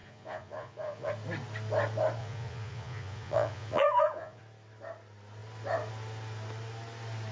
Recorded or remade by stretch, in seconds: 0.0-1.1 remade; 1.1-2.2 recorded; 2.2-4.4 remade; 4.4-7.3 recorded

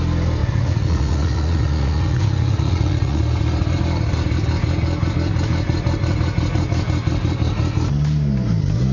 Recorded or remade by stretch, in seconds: 0.0-0.4 recorded; 0.4-3.2 remade; 3.2-8.9 recorded

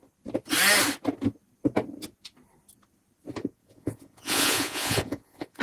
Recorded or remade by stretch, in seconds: 0.0-3.4 recorded; 3.4-5.6 remade